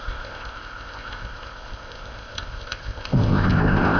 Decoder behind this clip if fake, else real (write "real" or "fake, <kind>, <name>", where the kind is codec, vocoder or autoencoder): fake, codec, ZipCodec